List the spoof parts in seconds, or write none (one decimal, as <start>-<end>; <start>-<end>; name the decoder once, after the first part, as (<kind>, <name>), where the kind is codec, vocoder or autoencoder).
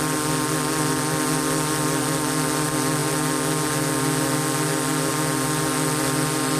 none